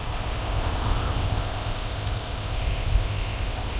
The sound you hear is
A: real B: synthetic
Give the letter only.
B